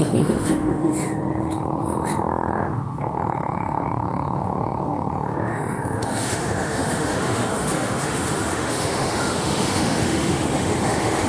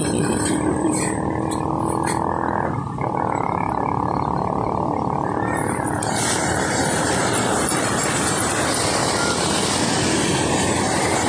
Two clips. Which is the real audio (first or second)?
second